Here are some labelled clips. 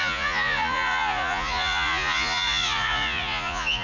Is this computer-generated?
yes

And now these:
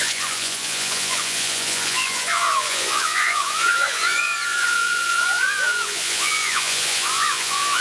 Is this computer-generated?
yes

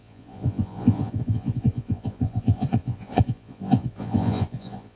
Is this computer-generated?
yes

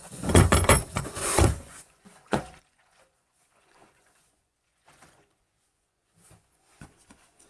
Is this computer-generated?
yes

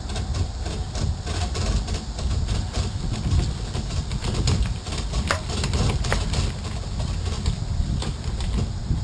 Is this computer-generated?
no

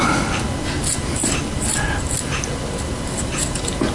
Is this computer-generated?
no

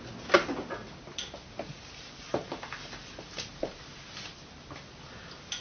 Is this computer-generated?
no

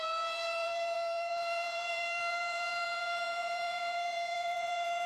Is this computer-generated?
yes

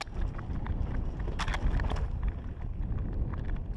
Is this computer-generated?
no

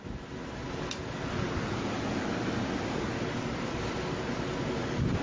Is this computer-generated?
no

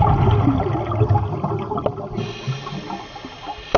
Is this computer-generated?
no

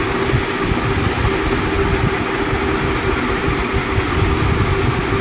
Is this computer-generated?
no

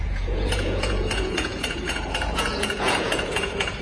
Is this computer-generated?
yes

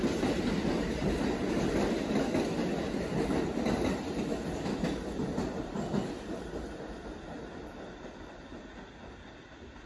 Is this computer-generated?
no